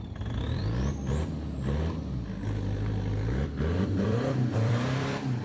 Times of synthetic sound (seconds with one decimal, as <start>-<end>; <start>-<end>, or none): 0.0-0.6; 3.8-5.4